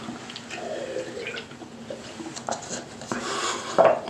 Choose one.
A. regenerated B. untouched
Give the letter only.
B